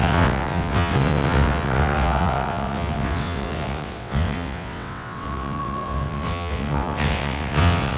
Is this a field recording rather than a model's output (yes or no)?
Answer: no